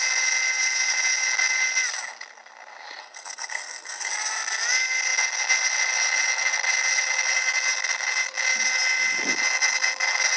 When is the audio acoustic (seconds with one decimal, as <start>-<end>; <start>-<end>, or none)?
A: 0.0-3.0; 4.1-10.4